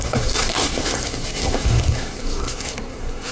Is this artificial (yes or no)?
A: yes